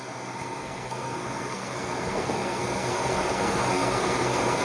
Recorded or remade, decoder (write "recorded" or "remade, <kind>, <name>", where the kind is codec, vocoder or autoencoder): remade, codec, SNAC